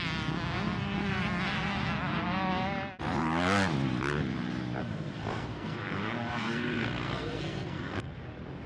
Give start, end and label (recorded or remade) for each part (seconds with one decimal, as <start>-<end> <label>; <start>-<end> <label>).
0.0-4.8 recorded; 4.8-8.1 remade; 8.1-8.7 recorded